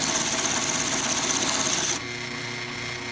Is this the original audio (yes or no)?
yes